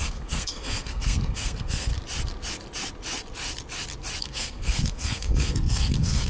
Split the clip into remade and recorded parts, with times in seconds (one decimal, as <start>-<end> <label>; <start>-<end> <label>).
0.0-1.9 remade; 1.9-4.2 recorded; 4.2-6.3 remade